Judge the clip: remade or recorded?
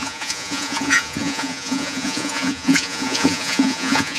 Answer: remade